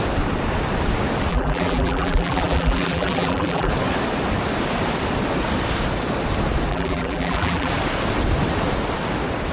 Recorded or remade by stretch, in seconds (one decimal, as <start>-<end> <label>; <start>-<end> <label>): 0.0-1.3 recorded; 1.3-3.7 remade; 3.7-6.7 recorded; 6.7-7.7 remade; 7.7-9.5 recorded